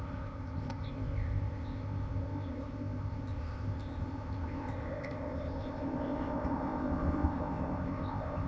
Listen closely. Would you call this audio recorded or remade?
remade